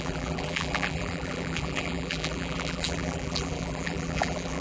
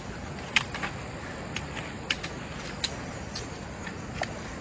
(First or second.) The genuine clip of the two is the second